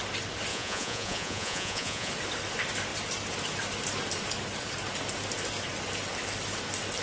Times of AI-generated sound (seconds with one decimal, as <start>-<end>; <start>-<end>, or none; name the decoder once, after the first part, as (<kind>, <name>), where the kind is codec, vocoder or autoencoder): 0.5-2.1 (vocoder, Vocos)